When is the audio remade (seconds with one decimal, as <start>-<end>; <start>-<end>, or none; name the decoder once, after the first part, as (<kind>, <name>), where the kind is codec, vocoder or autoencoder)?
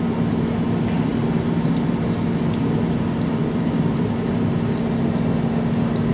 none